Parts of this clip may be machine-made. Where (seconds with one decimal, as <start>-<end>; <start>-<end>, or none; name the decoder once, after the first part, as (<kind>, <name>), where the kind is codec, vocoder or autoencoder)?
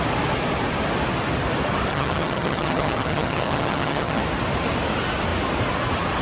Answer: 1.9-4.2 (vocoder, HiFi-GAN)